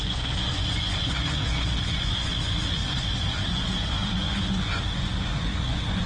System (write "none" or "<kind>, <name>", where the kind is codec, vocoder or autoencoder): vocoder, Vocos